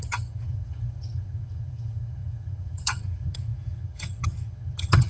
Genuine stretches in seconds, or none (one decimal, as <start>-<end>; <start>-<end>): none